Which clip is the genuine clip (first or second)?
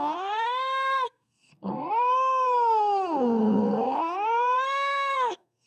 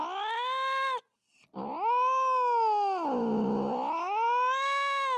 second